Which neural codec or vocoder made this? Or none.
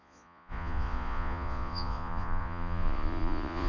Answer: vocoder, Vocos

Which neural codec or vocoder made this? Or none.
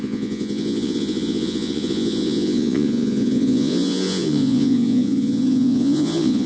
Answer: vocoder, Vocos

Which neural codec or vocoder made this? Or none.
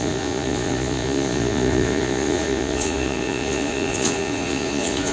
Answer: vocoder, Vocos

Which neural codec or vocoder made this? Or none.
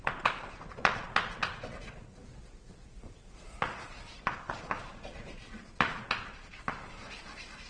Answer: vocoder, Vocos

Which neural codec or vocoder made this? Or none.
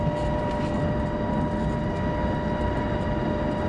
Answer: none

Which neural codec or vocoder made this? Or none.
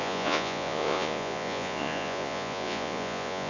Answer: vocoder, Vocos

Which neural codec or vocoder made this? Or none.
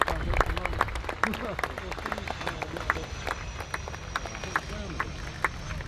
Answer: none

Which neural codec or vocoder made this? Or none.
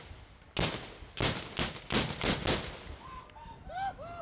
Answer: none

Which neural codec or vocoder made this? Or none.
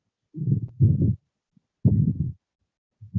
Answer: none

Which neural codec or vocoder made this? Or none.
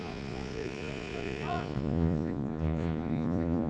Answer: vocoder, Vocos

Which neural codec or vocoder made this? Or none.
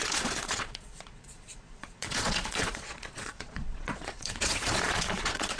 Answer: vocoder, Vocos